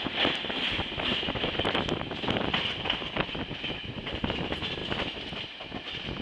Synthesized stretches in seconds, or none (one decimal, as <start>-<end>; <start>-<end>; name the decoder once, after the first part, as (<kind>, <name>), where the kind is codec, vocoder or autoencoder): 4.8-5.4 (vocoder, BigVGAN v2)